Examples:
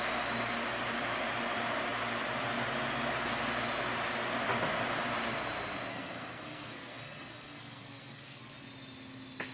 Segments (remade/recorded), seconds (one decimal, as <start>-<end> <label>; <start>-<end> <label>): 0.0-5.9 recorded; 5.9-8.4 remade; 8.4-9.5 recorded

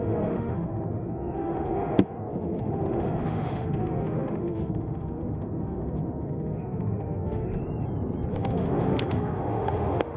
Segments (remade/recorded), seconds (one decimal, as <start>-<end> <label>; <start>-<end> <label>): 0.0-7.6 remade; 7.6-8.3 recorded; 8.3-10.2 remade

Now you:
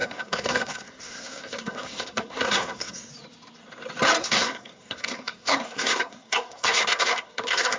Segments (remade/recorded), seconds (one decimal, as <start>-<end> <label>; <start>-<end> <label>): 0.0-3.1 remade; 3.1-4.2 recorded; 4.2-7.8 remade

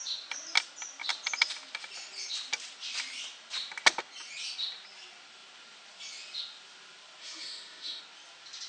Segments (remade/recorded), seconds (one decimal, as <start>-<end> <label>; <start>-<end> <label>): 0.0-7.2 recorded; 7.2-8.0 remade; 8.0-8.7 recorded

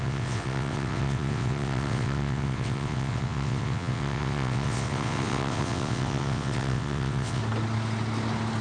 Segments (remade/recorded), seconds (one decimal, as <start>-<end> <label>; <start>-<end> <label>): 0.0-7.4 remade; 7.4-8.6 recorded

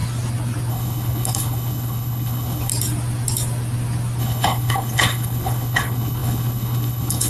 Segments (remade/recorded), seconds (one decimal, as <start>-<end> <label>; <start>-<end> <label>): 0.0-0.7 recorded; 0.7-2.7 remade; 2.7-4.2 recorded; 4.2-7.3 remade

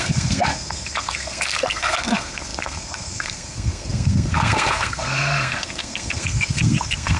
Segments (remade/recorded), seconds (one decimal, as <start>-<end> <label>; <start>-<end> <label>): 0.0-7.2 remade

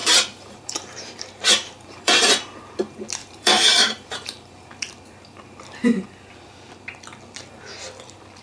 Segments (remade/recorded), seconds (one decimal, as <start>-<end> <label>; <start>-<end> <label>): 0.0-2.7 remade; 2.7-3.2 recorded; 3.2-4.7 remade; 4.7-8.4 recorded